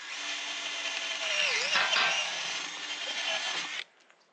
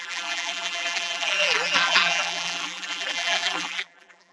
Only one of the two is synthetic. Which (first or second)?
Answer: second